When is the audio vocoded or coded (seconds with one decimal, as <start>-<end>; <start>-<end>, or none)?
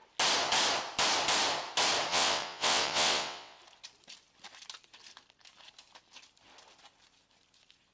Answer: 2.1-3.6